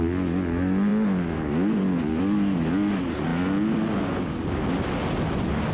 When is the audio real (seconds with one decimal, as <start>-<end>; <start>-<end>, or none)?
0.0-5.7